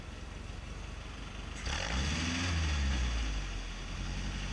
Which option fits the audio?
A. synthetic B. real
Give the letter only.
B